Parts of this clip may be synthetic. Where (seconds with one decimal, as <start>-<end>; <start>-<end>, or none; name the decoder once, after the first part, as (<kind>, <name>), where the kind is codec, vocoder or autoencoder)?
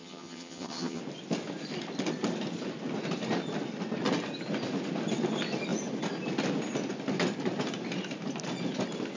0.0-1.0 (vocoder, HiFi-GAN)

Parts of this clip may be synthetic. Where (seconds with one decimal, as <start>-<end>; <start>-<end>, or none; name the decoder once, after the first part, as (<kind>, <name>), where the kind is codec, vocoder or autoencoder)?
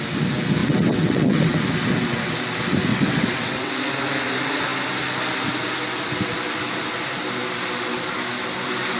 0.6-1.6 (vocoder, WaveNeXt); 2.9-3.7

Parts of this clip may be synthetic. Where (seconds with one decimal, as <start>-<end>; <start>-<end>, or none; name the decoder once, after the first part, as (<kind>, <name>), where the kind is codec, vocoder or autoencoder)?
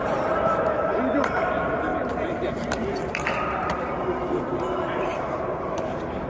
0.0-6.3 (vocoder, BigVGAN v2)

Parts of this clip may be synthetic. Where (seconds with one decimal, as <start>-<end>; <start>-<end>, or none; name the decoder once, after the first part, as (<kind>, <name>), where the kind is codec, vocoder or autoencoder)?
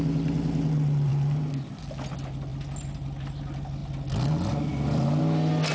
none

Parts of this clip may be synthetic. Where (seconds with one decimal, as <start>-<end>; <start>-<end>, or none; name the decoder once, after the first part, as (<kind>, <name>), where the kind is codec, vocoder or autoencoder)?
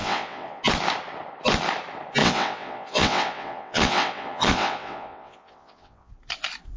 0.0-0.6 (vocoder, WaveNeXt); 2.2-6.1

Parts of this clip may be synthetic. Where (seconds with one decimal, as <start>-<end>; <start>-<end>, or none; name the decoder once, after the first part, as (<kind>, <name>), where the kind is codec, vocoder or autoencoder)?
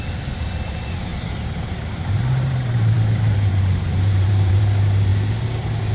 1.1-4.6 (vocoder, BigVGAN v2)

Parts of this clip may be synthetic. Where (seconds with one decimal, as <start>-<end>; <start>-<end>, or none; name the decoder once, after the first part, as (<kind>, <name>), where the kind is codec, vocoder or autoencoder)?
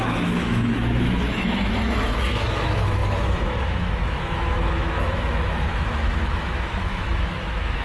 0.0-7.8 (autoencoder, DAC-VAE)